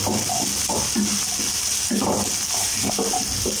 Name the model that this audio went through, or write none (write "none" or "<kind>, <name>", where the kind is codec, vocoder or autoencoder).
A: none